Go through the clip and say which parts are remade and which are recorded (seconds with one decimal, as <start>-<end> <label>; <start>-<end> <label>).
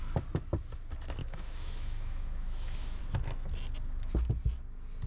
0.0-1.2 recorded; 1.2-3.0 remade; 3.0-5.1 recorded